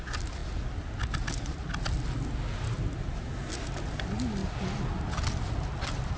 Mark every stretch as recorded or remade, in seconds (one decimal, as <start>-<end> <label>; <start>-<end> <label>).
0.0-6.2 recorded